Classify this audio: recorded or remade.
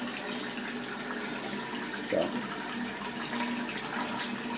recorded